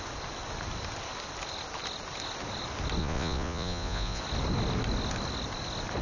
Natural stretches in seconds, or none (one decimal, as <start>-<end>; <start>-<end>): 0.0-3.0; 4.2-6.0

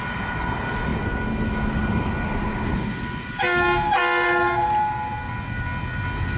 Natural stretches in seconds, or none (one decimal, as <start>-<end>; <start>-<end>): 0.0-6.4